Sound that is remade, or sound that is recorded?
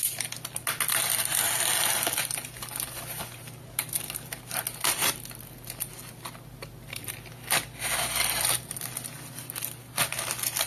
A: recorded